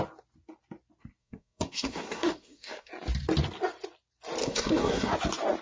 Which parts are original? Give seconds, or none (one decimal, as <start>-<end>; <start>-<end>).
0.0-1.2; 2.9-4.4; 5.1-5.6